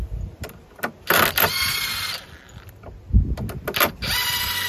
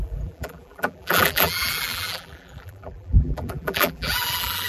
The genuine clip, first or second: first